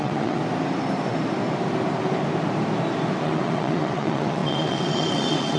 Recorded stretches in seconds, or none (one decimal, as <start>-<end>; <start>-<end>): 0.4-3.2

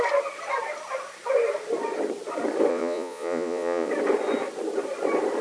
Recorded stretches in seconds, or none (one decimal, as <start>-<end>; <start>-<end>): 0.0-2.7; 3.9-5.4

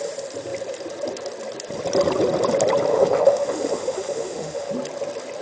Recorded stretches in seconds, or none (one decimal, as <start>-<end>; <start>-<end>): 0.0-2.9; 4.7-5.4